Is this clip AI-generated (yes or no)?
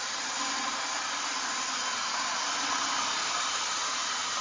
no